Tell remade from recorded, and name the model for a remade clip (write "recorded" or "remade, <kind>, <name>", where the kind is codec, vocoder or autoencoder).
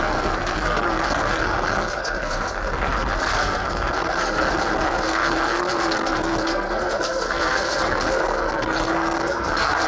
remade, codec, SNAC